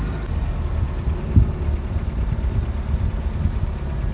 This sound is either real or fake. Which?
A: real